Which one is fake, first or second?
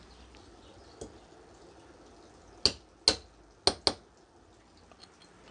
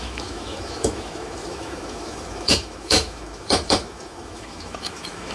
second